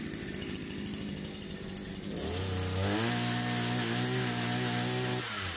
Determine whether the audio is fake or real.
real